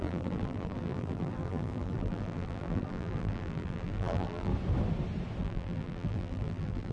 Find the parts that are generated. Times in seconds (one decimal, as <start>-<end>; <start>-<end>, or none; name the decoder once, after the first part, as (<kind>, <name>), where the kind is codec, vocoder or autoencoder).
0.0-4.5 (vocoder, BigVGAN v2); 5.4-6.9